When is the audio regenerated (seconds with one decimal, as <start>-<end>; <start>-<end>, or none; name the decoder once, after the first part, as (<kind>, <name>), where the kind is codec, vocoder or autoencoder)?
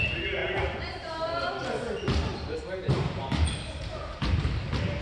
0.4-1.1 (vocoder, BigVGAN v2); 2.3-4.5